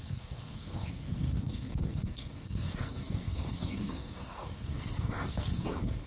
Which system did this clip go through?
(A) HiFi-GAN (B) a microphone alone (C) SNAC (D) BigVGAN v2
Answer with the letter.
C